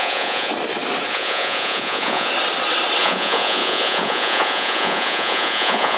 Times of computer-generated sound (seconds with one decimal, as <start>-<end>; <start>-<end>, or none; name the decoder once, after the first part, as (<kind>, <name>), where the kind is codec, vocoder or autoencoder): 0.0-0.5 (vocoder, Vocos); 1.1-2.3; 3.0-6.0